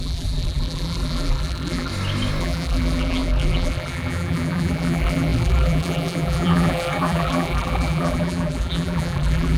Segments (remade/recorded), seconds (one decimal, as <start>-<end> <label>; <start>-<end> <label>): 0.0-1.9 remade; 1.9-2.4 recorded; 2.4-9.6 remade